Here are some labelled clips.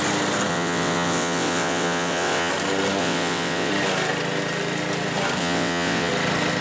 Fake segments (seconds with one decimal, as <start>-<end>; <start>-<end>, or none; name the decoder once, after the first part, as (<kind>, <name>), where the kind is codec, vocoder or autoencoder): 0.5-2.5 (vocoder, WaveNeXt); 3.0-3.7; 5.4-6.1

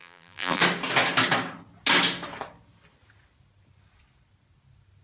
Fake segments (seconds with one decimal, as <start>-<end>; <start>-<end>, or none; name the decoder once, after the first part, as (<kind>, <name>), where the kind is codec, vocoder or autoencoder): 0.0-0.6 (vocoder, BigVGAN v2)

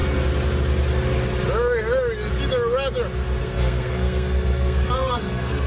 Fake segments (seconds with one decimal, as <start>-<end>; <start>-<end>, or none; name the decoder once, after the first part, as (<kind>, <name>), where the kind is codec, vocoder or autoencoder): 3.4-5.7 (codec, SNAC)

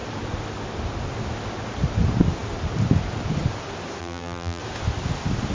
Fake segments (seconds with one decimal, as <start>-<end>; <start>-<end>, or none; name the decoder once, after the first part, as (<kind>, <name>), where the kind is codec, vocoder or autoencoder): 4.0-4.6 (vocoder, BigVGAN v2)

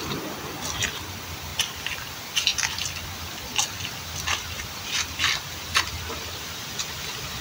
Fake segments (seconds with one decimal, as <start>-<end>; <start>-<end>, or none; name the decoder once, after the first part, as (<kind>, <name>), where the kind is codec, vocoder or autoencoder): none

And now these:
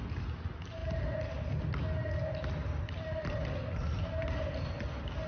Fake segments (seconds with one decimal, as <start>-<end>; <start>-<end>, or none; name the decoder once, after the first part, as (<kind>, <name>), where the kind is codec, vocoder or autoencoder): none

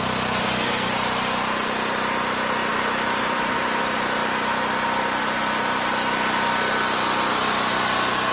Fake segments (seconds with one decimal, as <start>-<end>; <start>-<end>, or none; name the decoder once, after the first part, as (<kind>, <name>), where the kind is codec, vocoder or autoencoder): 0.4-0.9 (codec, SNAC)

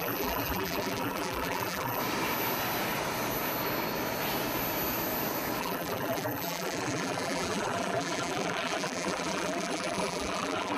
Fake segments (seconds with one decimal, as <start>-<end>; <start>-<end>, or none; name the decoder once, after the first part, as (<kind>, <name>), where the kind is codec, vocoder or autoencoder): 0.0-2.0 (vocoder, BigVGAN v2); 5.6-10.8